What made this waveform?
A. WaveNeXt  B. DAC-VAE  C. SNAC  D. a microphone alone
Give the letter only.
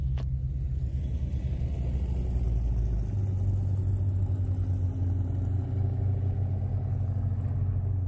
D